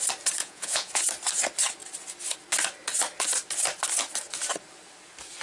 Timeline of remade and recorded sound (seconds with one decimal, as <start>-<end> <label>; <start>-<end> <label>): 0.0-0.4 recorded; 0.4-1.0 remade; 1.0-5.4 recorded